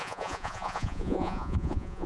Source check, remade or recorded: remade